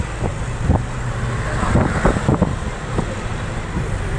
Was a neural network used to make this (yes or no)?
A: no